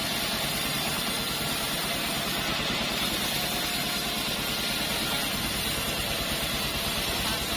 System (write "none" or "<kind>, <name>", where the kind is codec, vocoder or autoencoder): none